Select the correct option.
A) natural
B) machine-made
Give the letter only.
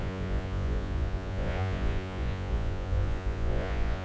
B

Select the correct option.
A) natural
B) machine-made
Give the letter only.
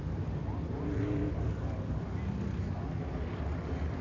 A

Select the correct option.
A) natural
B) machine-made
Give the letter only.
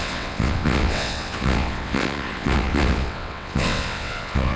B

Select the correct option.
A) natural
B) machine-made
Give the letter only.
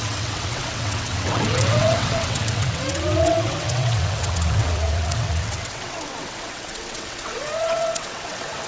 B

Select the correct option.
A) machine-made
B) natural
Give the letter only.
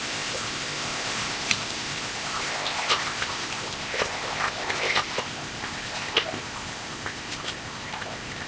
A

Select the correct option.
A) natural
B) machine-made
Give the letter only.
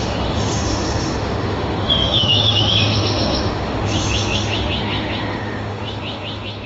B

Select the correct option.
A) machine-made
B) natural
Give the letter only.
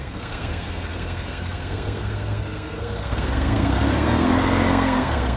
A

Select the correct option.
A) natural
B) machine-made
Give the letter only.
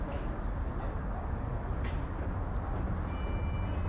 A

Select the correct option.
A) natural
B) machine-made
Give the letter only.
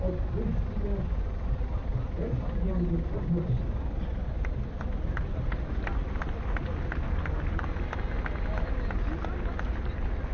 A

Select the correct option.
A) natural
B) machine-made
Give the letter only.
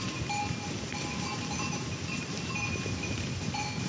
A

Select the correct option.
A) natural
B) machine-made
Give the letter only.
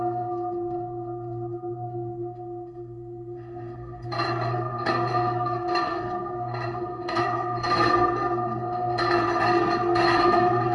B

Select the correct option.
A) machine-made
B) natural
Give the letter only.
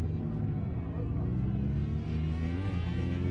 B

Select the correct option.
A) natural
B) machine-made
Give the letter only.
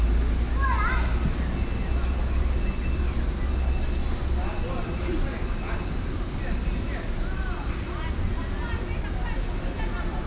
A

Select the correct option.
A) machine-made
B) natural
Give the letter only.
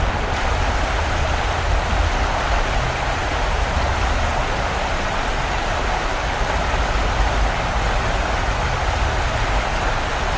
B